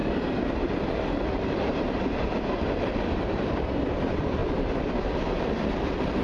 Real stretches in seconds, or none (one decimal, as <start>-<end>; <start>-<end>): 3.7-4.4